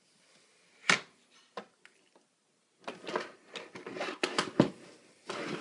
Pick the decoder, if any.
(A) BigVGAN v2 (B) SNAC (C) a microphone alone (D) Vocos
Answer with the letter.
C